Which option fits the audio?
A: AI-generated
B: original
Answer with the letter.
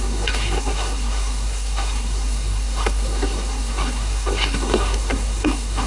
A